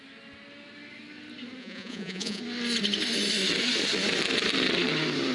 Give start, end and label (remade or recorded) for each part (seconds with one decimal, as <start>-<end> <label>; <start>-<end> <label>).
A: 0.0-1.6 recorded; 1.6-2.4 remade; 2.4-5.3 recorded